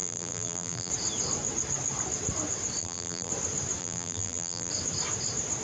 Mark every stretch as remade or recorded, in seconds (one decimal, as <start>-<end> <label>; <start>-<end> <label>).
0.0-0.9 remade; 0.9-2.8 recorded; 2.8-3.3 remade; 3.3-3.8 recorded; 3.8-4.7 remade; 4.7-5.6 recorded